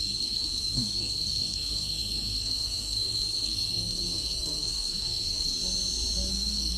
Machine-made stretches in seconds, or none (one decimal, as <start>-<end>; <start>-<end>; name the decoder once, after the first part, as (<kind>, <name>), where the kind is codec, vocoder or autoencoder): 0.0-5.6 (codec, SNAC); 6.3-6.8